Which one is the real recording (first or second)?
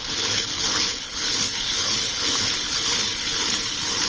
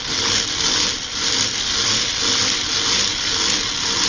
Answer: second